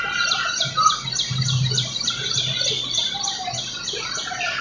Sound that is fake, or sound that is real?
real